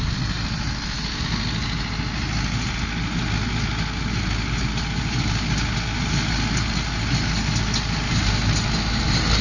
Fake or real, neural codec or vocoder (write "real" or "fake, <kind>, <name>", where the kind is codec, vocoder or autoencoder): real